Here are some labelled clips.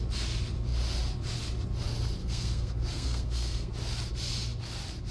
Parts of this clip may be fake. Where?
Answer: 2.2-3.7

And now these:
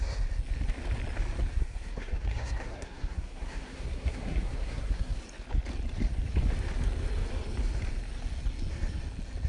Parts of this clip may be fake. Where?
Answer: 1.6-5.2

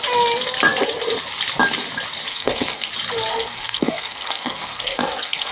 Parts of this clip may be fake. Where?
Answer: 2.3-2.9; 3.3-5.5

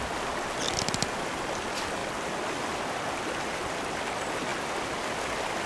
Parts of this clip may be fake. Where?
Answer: none